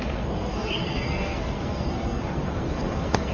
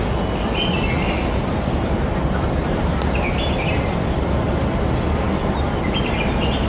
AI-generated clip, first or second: first